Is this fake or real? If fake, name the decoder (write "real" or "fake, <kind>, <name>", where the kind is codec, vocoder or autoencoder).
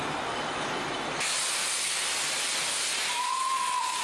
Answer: real